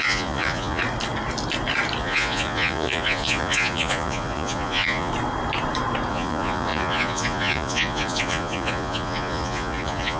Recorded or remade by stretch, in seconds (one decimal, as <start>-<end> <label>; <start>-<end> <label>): 0.0-0.8 remade; 0.8-2.0 recorded; 2.0-5.1 remade; 5.1-6.1 recorded; 6.1-10.2 remade